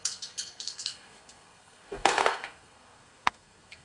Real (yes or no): no